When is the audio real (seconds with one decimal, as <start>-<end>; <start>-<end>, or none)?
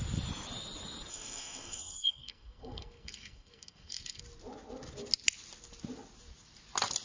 0.0-1.1; 4.2-7.0